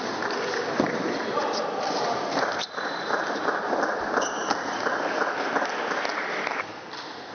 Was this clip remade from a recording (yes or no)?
no